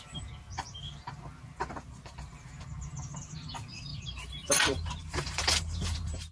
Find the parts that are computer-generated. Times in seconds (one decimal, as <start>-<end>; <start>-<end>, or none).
3.9-6.3